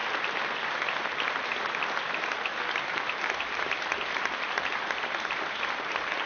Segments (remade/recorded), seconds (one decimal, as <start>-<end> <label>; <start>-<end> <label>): 0.0-6.3 recorded